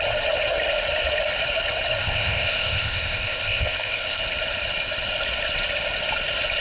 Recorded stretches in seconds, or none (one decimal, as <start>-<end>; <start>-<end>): 0.0-2.0; 4.2-6.6